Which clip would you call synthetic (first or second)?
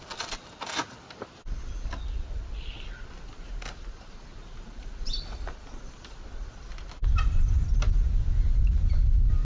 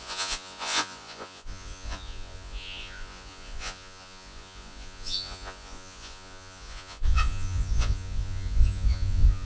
second